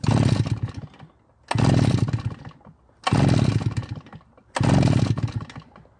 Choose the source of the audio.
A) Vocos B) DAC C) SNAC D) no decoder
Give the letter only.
D